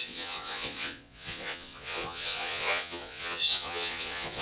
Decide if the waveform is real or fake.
fake